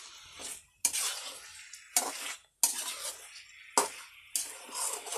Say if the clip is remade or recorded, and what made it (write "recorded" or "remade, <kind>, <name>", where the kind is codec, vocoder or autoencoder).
recorded